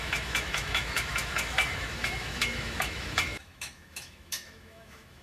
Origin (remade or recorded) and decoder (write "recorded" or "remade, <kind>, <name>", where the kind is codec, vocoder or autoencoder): remade, autoencoder, DAC-VAE